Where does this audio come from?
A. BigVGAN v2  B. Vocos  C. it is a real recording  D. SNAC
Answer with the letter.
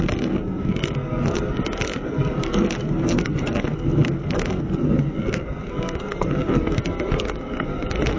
D